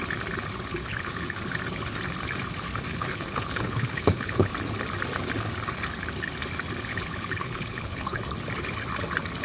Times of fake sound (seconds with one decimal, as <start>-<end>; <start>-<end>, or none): 0.9-1.5; 2.9-4.5; 6.9-8.2